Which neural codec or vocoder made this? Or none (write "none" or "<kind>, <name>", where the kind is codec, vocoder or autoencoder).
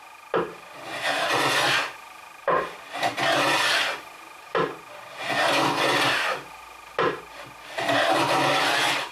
none